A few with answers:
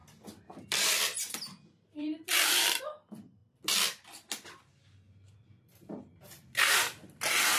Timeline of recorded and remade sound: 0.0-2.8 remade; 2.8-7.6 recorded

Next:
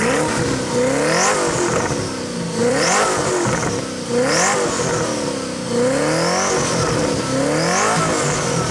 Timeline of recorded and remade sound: 0.0-2.6 recorded; 2.6-3.3 remade; 3.3-8.7 recorded

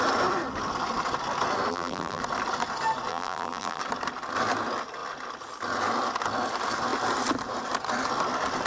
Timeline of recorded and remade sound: 0.0-1.7 recorded; 1.7-2.2 remade; 2.2-3.1 recorded; 3.1-3.8 remade; 3.8-8.7 recorded